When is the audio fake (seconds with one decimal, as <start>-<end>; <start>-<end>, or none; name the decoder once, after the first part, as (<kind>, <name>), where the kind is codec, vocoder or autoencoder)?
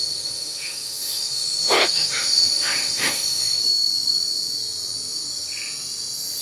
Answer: 0.0-3.6 (autoencoder, DAC-VAE)